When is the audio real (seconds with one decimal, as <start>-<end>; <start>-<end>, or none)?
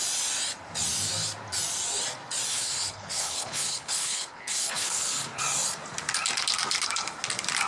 0.0-2.5; 5.4-7.7